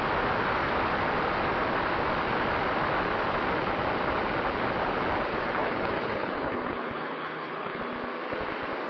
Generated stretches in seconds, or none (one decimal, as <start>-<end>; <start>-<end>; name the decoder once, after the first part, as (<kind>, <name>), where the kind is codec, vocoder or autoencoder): 5.3-7.8 (codec, HILCodec)

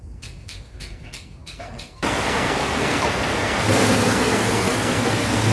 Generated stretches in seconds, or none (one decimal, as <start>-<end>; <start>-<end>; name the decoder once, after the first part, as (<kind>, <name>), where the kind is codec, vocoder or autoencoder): 0.0-5.5 (codec, SNAC)

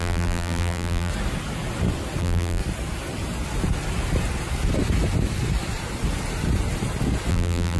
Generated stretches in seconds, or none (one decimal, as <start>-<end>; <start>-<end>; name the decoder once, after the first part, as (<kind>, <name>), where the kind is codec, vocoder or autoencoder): 0.0-1.1 (vocoder, BigVGAN v2); 2.2-2.6; 7.3-7.8

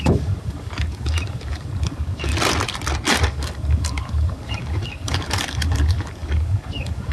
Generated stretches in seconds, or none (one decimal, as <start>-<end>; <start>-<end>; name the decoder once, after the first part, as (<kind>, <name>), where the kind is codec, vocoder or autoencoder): 0.0-2.3 (codec, DAC); 3.2-7.1

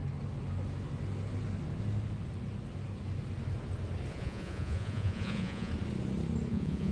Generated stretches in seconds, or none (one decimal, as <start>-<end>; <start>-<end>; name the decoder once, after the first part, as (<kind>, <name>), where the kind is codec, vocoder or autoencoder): 4.1-5.7 (vocoder, Vocos); 6.5-6.9

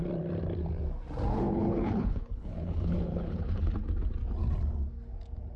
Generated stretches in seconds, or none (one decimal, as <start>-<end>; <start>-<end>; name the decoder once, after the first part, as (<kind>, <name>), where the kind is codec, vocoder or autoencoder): 1.3-3.7 (codec, HILCodec)

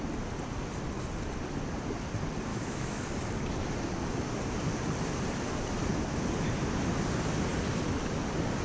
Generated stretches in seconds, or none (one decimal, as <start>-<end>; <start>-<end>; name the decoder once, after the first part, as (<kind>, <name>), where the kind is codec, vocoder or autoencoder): 2.5-3.0 (autoencoder, DAC-VAE)